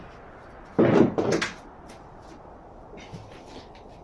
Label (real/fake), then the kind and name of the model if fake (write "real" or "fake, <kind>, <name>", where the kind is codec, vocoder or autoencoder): real